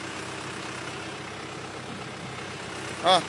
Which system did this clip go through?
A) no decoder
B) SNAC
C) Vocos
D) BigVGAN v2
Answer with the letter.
A